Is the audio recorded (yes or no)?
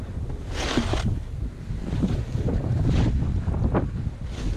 yes